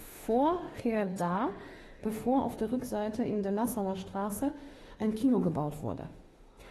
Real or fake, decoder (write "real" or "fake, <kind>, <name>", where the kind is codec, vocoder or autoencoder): fake, autoencoder, DAC-VAE